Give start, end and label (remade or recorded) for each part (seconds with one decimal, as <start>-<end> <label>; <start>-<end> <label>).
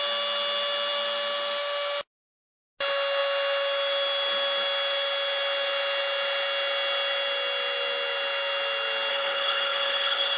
0.0-9.1 recorded; 9.1-10.4 remade